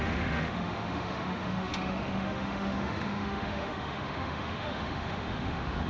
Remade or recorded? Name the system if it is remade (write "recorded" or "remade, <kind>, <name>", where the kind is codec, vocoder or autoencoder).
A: remade, autoencoder, DAC-VAE